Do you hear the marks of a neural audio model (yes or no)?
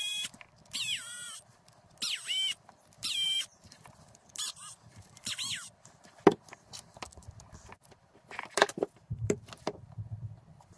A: yes